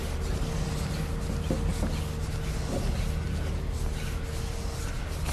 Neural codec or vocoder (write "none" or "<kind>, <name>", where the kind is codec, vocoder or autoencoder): none